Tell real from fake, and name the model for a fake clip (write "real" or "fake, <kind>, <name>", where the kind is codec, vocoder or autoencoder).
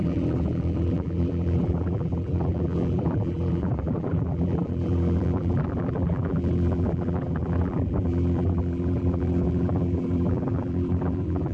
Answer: fake, vocoder, BigVGAN v2